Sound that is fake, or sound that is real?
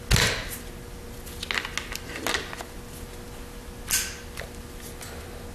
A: real